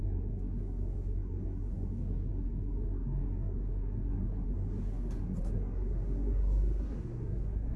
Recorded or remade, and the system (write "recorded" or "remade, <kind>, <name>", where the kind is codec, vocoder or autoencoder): remade, codec, SNAC